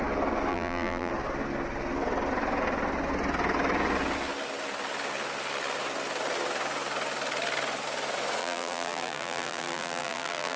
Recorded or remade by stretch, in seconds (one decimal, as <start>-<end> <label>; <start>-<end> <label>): 0.0-0.5 recorded; 0.5-1.1 remade; 1.1-8.4 recorded; 8.4-10.6 remade